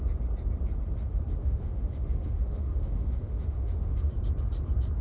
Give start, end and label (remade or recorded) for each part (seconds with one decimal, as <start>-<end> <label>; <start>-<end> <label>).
0.0-1.4 recorded; 1.4-4.1 remade; 4.1-5.0 recorded

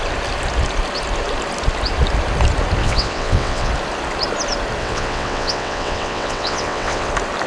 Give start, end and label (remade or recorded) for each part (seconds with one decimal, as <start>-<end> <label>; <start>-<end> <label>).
0.0-2.8 recorded; 2.8-3.7 remade; 3.7-4.8 recorded; 4.8-7.1 remade; 7.1-7.5 recorded

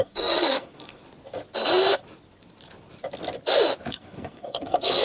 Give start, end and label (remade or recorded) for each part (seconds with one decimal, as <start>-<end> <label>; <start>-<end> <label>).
0.0-1.0 remade; 1.0-3.9 recorded; 3.9-5.0 remade

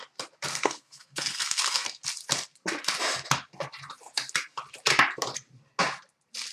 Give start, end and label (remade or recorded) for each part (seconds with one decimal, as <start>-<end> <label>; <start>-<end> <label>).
0.0-0.5 recorded; 0.5-2.0 remade; 2.0-6.5 recorded

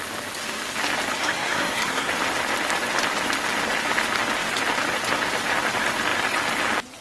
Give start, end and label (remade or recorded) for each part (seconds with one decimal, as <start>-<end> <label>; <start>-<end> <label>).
0.0-1.2 recorded; 1.2-2.1 remade; 2.1-7.0 recorded

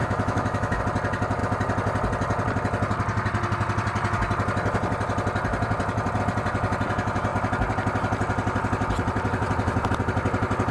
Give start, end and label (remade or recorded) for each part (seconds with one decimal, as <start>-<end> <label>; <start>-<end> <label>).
0.0-0.8 remade; 0.8-10.7 recorded

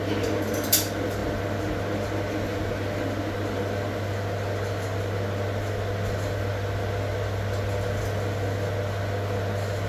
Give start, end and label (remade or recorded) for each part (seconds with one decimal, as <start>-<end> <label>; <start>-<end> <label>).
0.0-9.9 recorded